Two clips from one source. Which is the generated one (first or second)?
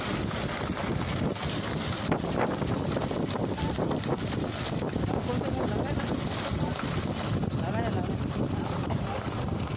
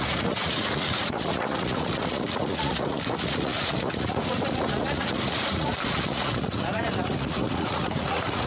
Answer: second